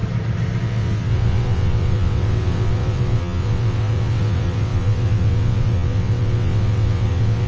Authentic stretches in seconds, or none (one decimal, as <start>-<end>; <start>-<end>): 0.0-0.6